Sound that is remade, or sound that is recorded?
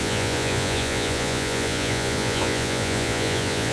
remade